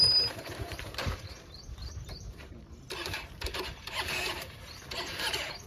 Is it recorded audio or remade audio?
remade